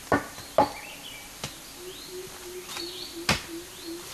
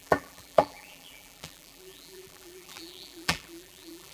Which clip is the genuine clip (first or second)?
first